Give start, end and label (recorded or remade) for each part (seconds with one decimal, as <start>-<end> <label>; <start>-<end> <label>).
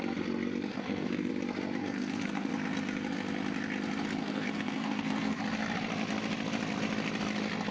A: 0.0-0.7 recorded; 0.7-1.3 remade; 1.3-1.8 recorded; 1.8-2.5 remade; 2.5-4.2 recorded; 4.2-5.4 remade; 5.4-7.7 recorded